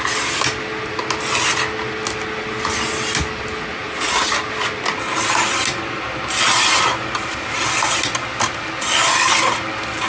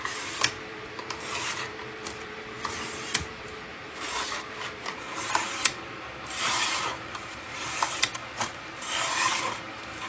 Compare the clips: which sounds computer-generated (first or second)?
second